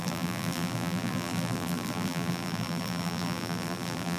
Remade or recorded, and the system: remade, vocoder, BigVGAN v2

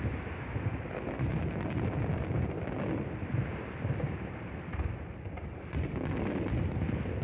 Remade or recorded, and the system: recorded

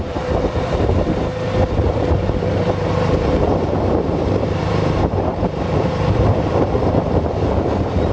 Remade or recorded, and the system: remade, vocoder, BigVGAN v2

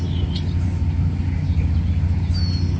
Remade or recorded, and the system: recorded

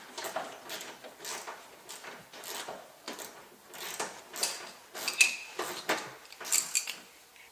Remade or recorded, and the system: recorded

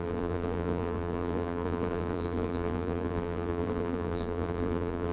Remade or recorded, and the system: remade, vocoder, BigVGAN v2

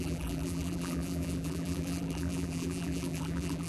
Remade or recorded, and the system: remade, vocoder, BigVGAN v2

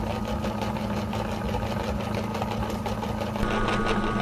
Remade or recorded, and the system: recorded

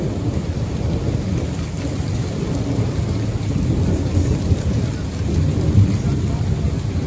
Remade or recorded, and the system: recorded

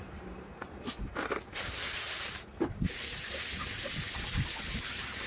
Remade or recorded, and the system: remade, vocoder, BigVGAN v2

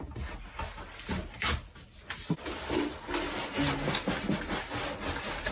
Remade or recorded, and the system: recorded